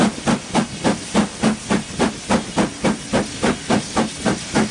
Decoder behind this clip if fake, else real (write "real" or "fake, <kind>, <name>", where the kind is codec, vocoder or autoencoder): real